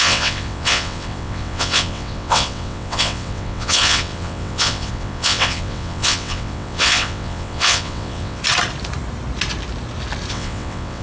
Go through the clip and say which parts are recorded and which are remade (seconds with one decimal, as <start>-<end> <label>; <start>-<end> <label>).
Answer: 0.0-8.4 remade; 8.4-10.3 recorded; 10.3-11.0 remade